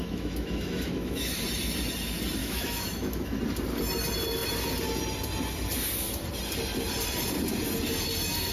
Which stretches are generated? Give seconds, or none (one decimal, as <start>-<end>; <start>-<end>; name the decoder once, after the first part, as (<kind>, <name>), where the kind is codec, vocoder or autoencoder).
0.0-1.4 (autoencoder, DAC-VAE); 2.4-3.4